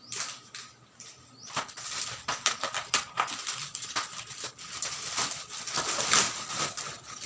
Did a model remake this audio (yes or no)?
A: no